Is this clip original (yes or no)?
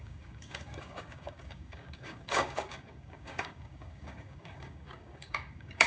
no